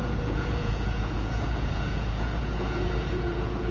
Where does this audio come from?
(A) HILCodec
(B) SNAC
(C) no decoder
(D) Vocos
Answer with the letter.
D